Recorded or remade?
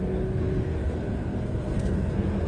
remade